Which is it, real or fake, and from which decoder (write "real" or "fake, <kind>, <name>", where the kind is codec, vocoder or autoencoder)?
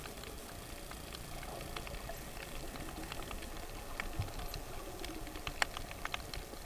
real